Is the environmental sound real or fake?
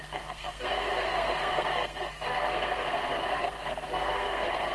fake